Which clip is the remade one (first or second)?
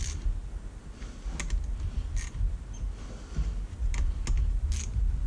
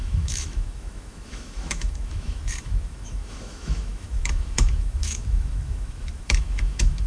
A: second